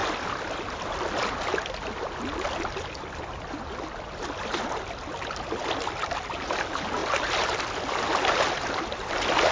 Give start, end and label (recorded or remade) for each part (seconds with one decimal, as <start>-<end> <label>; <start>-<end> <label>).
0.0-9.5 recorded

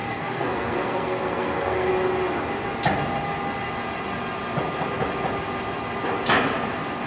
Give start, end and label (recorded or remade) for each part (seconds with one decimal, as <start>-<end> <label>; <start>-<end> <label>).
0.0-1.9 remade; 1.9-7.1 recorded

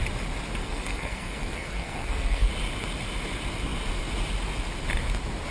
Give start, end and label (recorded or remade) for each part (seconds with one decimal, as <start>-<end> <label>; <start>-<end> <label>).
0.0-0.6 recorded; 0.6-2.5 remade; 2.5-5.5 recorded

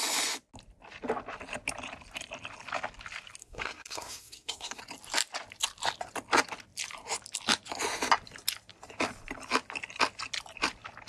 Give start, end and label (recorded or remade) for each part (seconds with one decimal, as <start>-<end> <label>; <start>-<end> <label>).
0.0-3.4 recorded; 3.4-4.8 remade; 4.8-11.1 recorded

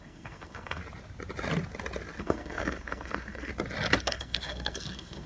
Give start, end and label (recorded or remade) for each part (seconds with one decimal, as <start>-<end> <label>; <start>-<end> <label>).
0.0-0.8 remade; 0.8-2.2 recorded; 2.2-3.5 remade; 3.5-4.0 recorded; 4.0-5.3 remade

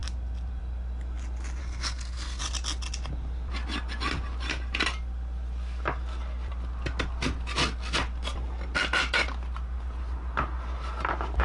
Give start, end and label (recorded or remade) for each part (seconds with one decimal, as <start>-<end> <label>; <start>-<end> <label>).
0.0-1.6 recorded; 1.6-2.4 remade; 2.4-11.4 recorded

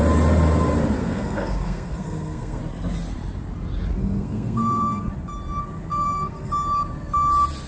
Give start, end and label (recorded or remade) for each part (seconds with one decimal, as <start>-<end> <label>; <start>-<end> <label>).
0.0-1.0 recorded; 1.0-2.6 remade; 2.6-4.0 recorded; 4.0-5.1 remade; 5.1-5.9 recorded; 5.9-6.5 remade; 6.5-7.7 recorded

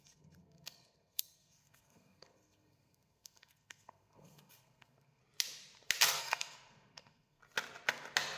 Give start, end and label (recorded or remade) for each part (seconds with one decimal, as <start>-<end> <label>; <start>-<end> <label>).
0.0-5.2 remade; 5.2-6.2 recorded; 6.2-7.4 remade; 7.4-8.4 recorded